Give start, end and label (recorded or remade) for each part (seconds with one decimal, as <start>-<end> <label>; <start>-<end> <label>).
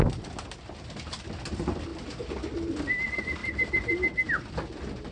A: 0.0-5.1 recorded